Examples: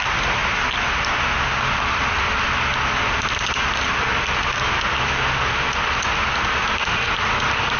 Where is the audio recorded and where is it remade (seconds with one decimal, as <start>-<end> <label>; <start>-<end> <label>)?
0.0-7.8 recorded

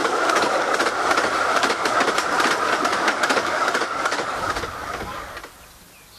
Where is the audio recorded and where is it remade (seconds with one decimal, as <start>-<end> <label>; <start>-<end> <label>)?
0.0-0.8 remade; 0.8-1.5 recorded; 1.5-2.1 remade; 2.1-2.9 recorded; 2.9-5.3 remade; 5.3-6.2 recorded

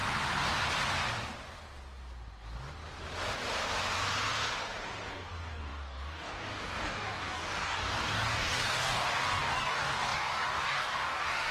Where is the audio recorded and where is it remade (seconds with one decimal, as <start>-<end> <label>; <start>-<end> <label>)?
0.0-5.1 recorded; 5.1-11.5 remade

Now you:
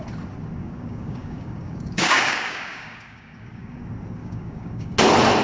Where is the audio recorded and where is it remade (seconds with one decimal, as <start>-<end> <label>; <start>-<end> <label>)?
0.0-0.6 recorded; 0.6-3.8 remade; 3.8-4.2 recorded; 4.2-4.9 remade; 4.9-5.4 recorded